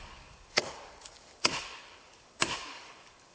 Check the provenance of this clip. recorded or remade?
remade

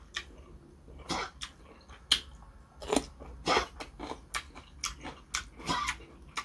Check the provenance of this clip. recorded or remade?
recorded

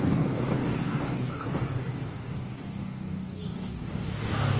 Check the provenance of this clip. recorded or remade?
remade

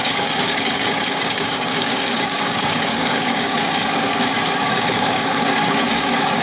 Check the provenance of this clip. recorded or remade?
remade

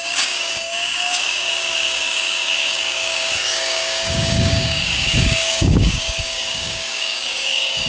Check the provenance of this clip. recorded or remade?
remade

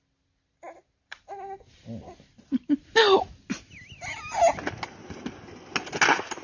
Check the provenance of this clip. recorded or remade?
recorded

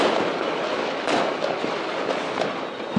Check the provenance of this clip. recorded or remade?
recorded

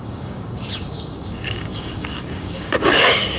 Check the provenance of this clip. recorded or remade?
remade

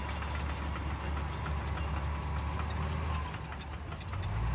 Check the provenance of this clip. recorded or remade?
recorded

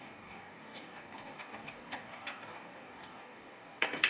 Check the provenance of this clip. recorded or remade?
remade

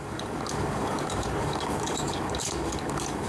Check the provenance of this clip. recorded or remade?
remade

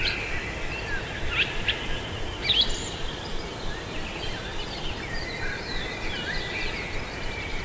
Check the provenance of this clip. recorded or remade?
recorded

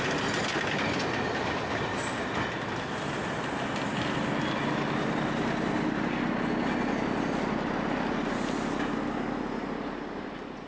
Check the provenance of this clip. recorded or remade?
recorded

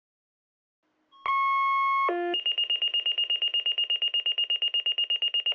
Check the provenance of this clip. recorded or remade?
recorded